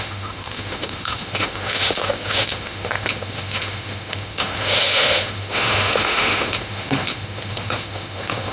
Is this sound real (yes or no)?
no